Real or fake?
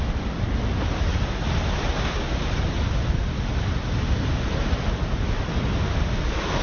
real